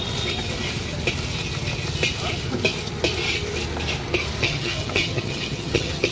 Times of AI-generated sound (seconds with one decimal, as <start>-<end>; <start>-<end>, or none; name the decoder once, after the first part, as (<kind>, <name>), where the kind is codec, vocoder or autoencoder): 4.4-6.1 (vocoder, HiFi-GAN)